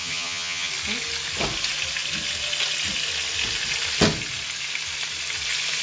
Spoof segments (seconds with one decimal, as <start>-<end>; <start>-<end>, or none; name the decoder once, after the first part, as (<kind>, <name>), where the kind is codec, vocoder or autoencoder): 0.0-0.7 (vocoder, HiFi-GAN)